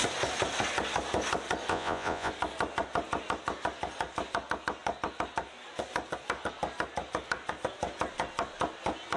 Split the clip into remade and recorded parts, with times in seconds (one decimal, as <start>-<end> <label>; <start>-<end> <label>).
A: 0.0-1.7 recorded; 1.7-2.3 remade; 2.3-9.2 recorded